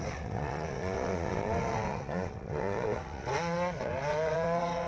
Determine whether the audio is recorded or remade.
remade